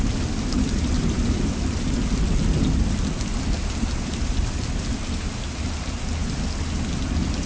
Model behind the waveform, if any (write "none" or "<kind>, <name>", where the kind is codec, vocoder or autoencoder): none